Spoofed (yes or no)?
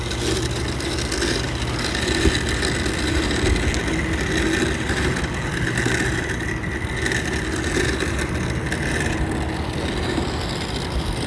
no